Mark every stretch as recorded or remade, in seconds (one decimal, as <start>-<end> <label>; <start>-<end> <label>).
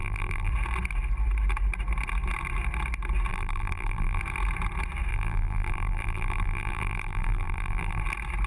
0.0-0.5 remade; 0.5-3.3 recorded; 3.3-4.2 remade; 4.2-5.1 recorded; 5.1-8.0 remade; 8.0-8.5 recorded